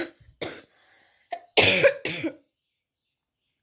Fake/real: real